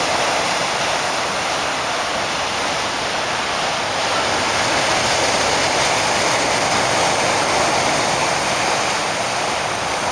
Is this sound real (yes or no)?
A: yes